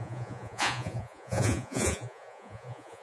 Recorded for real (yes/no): no